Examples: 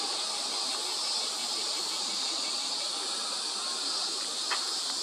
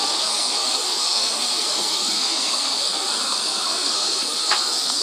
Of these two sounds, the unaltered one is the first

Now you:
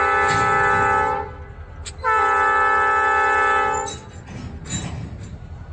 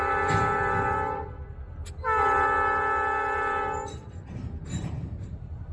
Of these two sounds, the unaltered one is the first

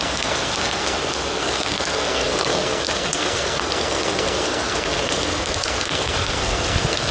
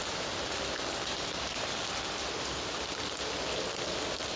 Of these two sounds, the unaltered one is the second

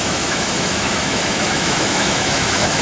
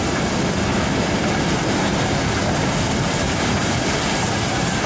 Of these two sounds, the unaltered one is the second